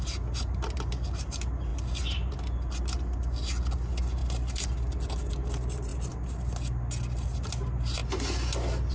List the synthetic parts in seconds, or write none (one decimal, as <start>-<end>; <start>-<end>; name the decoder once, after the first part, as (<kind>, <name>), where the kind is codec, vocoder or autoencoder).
none